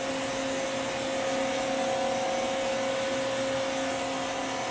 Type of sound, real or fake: real